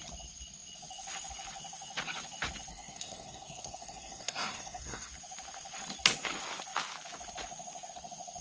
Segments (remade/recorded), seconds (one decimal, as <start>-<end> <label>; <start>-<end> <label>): 0.0-2.7 recorded; 2.7-5.1 remade; 5.1-8.4 recorded